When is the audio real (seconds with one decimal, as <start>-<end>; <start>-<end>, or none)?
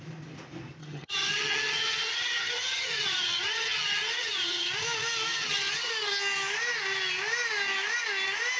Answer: 0.0-0.8; 4.7-5.3; 5.9-8.6